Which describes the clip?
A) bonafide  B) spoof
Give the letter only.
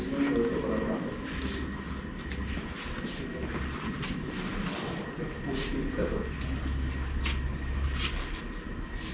A